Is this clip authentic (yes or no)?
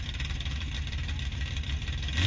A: yes